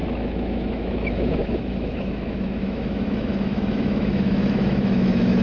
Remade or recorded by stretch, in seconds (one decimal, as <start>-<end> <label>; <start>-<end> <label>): 0.0-5.4 remade